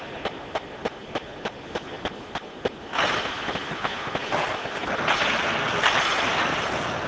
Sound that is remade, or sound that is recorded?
recorded